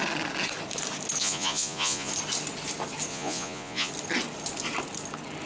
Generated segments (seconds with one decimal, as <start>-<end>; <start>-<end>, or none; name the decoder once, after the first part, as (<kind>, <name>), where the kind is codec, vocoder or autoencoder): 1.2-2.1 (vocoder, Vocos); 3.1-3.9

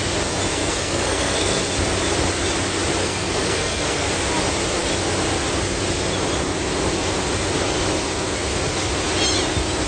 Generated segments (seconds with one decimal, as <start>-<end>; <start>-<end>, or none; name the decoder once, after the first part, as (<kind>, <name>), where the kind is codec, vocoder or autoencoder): 0.5-1.6 (codec, SNAC); 3.0-4.1

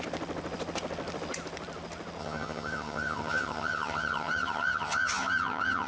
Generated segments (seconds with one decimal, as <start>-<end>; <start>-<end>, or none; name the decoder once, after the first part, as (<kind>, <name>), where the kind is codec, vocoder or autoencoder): 2.2-5.9 (vocoder, HiFi-GAN)

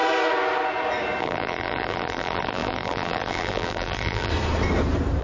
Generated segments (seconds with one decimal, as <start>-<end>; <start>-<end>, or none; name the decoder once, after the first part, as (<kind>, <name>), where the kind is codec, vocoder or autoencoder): 1.2-4.3 (vocoder, BigVGAN v2)